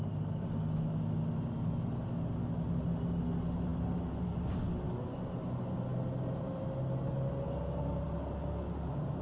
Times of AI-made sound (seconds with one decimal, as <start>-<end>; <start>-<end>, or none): none